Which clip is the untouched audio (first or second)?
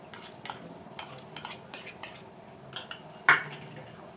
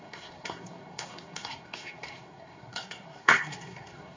first